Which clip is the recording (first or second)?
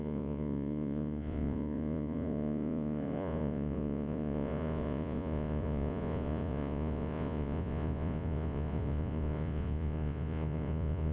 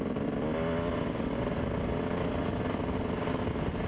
second